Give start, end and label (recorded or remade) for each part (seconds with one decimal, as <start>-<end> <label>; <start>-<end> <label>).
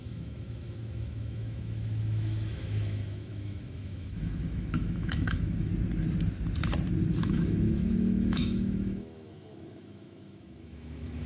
0.0-5.7 remade; 5.7-7.2 recorded; 7.2-11.3 remade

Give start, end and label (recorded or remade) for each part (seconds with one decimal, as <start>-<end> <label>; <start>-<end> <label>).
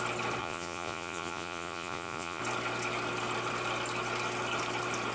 0.0-0.4 recorded; 0.4-2.4 remade; 2.4-5.1 recorded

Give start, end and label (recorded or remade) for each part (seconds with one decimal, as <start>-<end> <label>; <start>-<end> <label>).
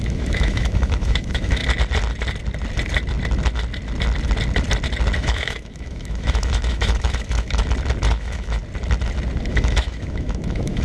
0.0-1.6 remade; 1.6-5.2 recorded; 5.2-7.6 remade; 7.6-8.1 recorded; 8.1-8.6 remade; 8.6-9.5 recorded; 9.5-10.8 remade